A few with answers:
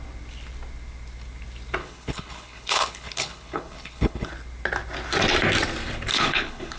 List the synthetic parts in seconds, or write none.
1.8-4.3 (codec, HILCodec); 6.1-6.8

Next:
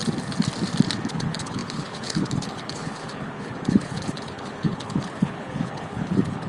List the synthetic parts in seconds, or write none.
1.1-6.5 (codec, HILCodec)